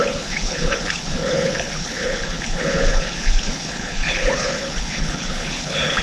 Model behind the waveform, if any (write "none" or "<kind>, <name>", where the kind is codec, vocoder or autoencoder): codec, HILCodec